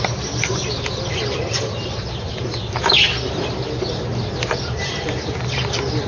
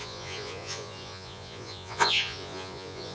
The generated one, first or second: second